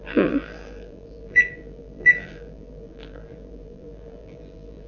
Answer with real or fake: fake